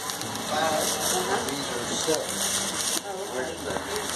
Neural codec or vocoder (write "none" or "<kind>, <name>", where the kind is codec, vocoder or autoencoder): none